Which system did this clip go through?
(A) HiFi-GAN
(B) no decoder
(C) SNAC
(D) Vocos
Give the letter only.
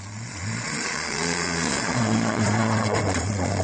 D